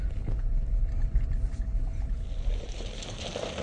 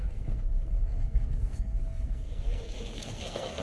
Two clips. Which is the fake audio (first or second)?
second